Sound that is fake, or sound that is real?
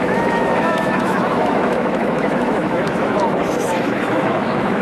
fake